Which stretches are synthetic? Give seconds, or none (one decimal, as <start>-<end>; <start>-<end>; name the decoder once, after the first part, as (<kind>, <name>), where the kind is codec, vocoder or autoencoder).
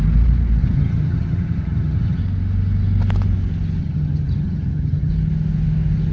0.6-2.2 (vocoder, HiFi-GAN); 3.8-5.1